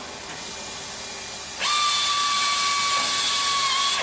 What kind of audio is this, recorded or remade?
recorded